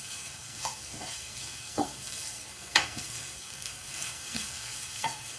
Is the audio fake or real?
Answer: fake